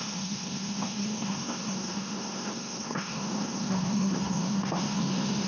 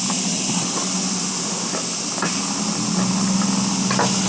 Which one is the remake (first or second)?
first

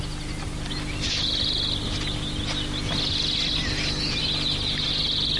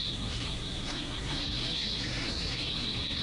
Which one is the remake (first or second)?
second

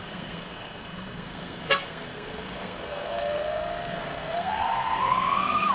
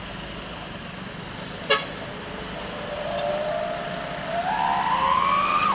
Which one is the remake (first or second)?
first